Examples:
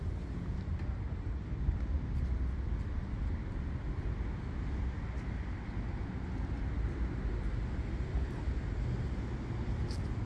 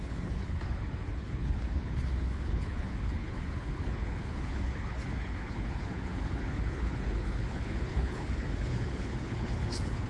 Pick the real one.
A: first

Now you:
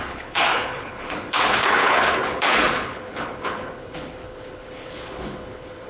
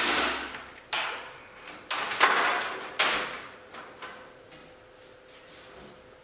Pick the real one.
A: second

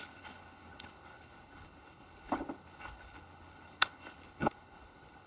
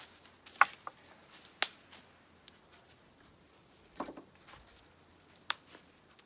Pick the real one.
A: second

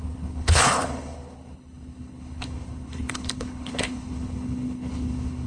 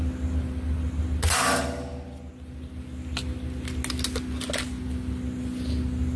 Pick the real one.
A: second